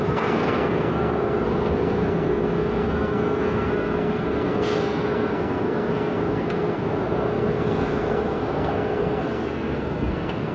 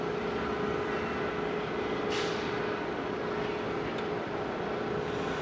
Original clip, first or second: second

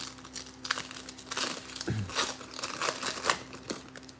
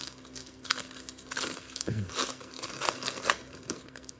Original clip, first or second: first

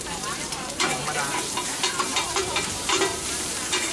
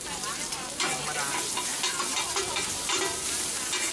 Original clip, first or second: second